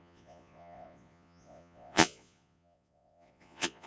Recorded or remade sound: remade